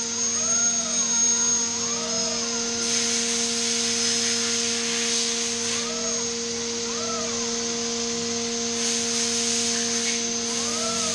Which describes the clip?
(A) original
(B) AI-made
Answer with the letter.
A